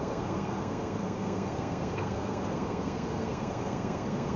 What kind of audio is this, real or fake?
fake